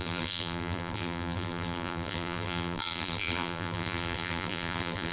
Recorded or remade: remade